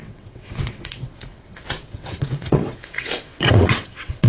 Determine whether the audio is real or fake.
fake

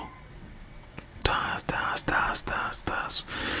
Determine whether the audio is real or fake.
fake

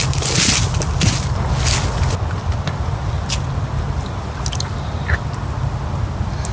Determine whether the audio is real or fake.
real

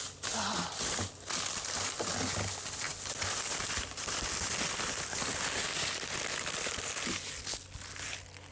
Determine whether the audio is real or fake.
real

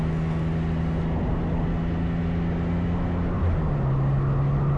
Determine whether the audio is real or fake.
real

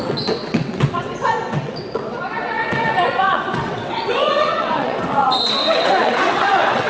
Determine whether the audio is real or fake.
fake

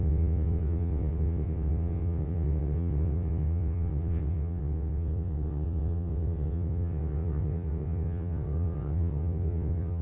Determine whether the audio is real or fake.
fake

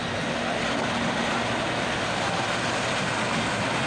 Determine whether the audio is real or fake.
real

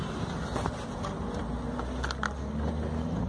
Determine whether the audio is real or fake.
real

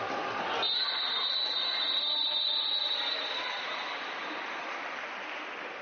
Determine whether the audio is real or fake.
real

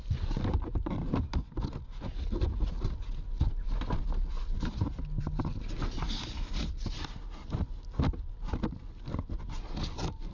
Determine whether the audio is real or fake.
real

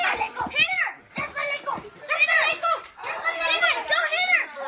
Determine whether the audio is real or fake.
real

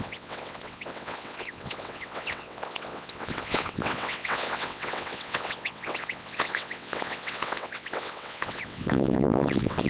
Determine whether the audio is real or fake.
fake